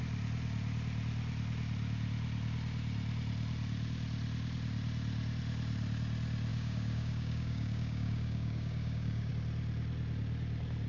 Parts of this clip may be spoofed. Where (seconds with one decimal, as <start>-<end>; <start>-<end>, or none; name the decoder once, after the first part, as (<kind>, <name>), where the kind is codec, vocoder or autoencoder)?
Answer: 6.5-9.3 (codec, DAC)